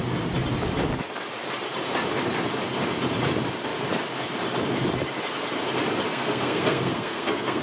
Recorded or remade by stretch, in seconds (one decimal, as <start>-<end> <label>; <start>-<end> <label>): 0.0-6.1 recorded; 6.1-7.6 remade